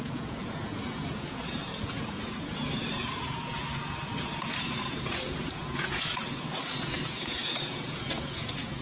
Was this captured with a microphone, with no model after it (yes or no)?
no